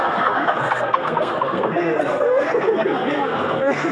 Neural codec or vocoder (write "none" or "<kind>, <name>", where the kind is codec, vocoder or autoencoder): codec, SNAC